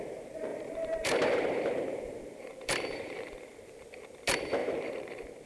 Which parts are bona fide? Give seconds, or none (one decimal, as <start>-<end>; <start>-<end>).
0.0-0.5; 3.7-4.6